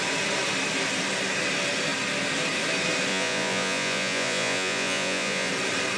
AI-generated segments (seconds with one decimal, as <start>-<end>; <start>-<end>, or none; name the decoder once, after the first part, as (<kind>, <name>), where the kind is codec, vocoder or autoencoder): 3.1-5.5 (vocoder, Vocos)